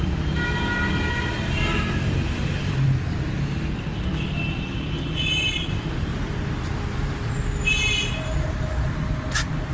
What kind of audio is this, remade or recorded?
recorded